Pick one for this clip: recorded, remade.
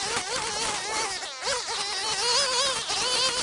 recorded